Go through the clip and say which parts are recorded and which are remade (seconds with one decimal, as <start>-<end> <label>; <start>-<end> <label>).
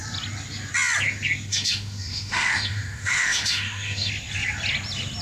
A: 0.0-1.5 recorded; 1.5-4.1 remade; 4.1-5.2 recorded